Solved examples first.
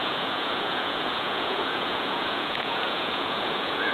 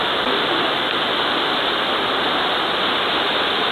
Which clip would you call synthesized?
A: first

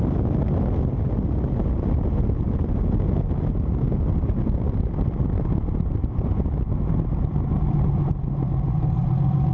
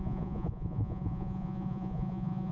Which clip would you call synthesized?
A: second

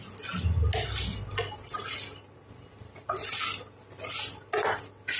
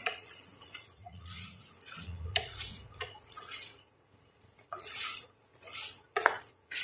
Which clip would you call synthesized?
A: second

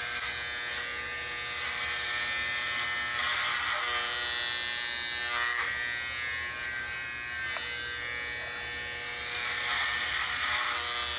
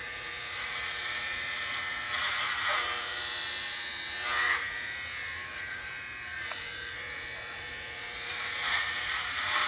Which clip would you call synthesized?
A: second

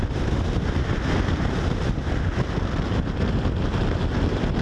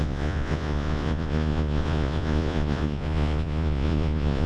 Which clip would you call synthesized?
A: second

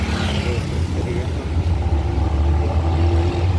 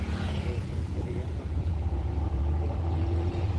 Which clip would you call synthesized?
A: second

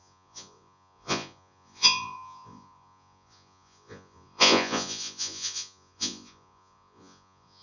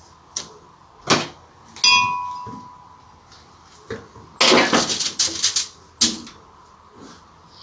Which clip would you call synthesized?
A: first